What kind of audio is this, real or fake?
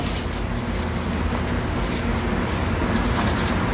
real